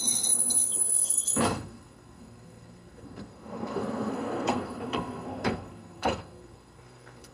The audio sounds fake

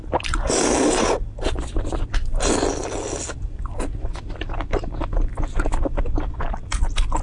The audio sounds real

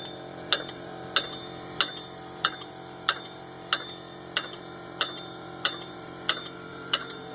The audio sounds fake